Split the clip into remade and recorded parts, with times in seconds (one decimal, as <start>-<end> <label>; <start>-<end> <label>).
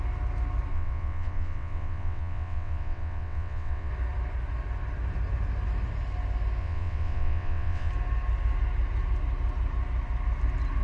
0.0-0.7 recorded; 0.7-3.9 remade; 3.9-6.6 recorded; 6.6-7.9 remade; 7.9-10.8 recorded